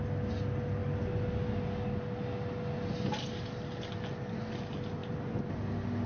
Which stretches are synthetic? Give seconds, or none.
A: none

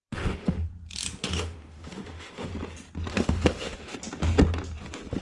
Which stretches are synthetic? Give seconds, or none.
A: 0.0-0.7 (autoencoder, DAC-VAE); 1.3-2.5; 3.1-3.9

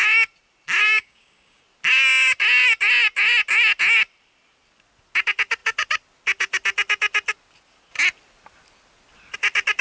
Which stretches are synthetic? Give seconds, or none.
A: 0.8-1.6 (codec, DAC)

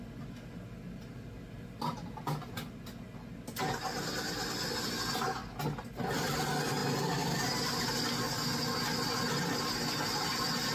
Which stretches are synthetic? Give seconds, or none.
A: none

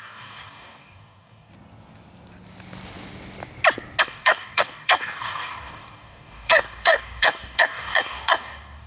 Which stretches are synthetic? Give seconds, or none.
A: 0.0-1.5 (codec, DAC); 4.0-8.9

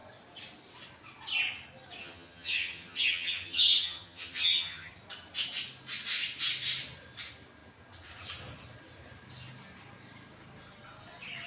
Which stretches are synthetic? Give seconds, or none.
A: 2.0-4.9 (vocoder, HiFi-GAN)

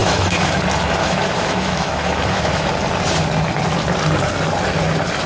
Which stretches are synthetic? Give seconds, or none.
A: 0.0-0.6 (autoencoder, DAC-VAE); 1.0-2.7